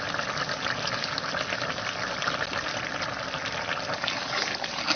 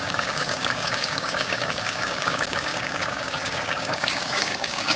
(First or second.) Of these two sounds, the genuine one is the first